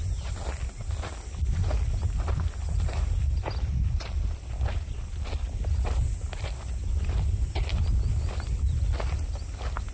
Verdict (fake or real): real